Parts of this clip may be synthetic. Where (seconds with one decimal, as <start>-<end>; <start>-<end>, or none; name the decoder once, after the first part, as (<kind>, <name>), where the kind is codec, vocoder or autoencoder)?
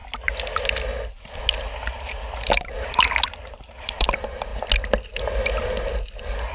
none